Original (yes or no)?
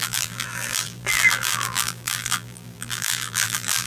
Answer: no